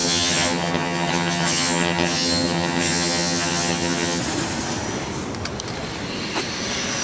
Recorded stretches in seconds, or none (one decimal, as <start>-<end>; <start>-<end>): 4.2-7.0